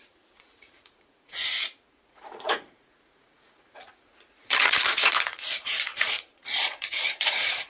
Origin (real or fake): fake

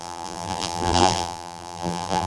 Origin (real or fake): fake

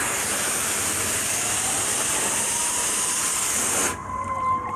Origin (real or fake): real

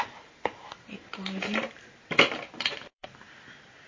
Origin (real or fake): fake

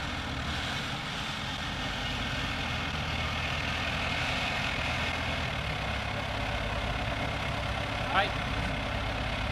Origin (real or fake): real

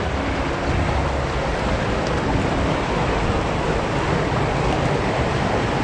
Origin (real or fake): real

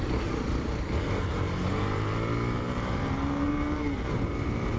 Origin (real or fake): fake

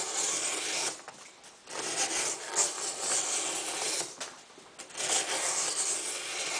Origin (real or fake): real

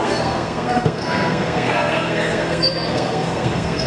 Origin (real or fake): fake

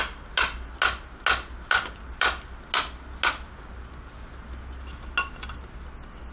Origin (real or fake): real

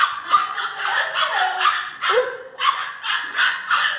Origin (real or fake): fake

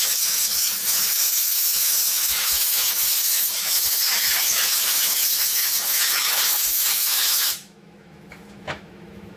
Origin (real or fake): fake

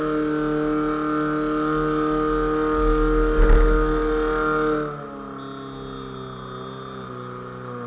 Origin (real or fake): real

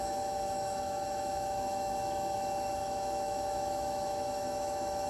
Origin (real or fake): fake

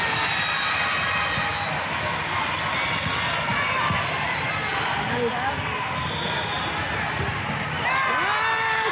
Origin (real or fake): real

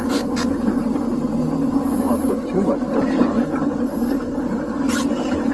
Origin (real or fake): real